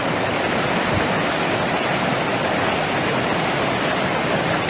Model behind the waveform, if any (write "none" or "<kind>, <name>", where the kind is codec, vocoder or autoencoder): none